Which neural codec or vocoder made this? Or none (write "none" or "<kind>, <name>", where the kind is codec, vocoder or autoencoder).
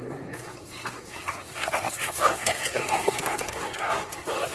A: codec, SNAC